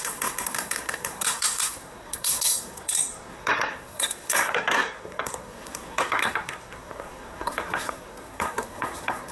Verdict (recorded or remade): remade